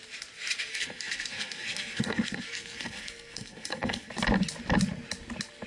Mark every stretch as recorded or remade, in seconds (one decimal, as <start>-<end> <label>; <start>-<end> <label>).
0.0-0.7 recorded; 0.7-4.1 remade; 4.1-5.7 recorded